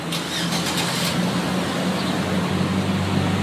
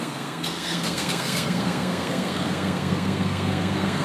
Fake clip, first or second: second